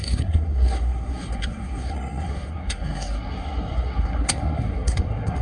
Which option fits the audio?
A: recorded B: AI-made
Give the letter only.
B